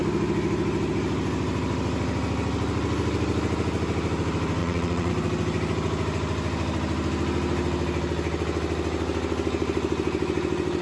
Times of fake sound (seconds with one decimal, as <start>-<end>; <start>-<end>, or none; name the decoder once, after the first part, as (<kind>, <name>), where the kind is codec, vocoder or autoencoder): 4.6-5.1 (vocoder, Vocos)